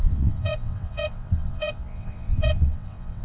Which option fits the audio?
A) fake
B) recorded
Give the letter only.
A